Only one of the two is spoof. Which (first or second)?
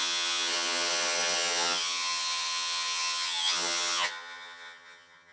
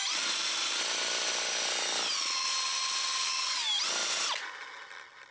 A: first